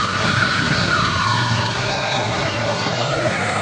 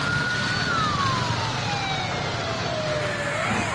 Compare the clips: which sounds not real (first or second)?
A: first